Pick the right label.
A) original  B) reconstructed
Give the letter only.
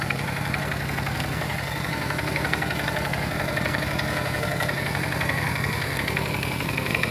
B